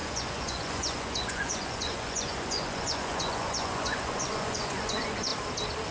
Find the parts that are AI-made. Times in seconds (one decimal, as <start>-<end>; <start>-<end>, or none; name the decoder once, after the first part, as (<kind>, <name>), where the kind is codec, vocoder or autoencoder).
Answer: 0.0-5.3 (vocoder, Vocos)

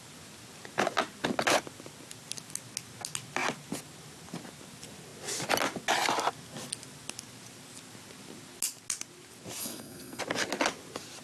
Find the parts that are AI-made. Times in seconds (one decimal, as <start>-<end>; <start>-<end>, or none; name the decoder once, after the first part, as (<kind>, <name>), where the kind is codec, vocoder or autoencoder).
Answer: 9.6-10.2 (codec, SNAC)

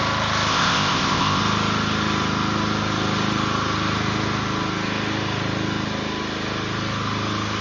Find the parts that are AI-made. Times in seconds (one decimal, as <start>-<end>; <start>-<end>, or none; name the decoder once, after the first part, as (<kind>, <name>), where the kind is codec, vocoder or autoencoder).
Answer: 0.5-1.4 (codec, ZipCodec)

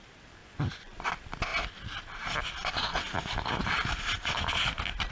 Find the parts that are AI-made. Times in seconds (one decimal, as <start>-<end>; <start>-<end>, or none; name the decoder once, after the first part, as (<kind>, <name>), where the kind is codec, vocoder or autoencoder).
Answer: 0.4-1.1 (vocoder, Vocos)

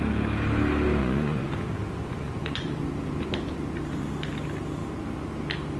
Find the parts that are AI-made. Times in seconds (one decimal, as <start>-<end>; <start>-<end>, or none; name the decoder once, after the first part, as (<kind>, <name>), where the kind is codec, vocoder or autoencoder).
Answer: 1.0-1.5 (vocoder, Vocos); 2.0-2.8

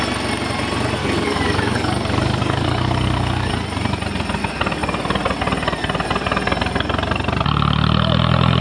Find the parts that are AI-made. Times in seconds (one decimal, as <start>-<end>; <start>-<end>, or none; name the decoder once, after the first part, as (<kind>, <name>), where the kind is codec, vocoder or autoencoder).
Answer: 1.0-3.5 (codec, DAC)